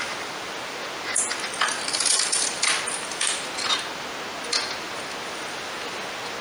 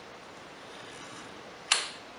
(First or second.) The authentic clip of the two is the first